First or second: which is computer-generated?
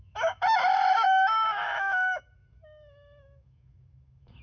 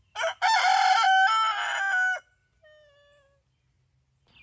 first